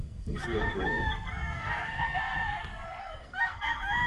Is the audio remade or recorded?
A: remade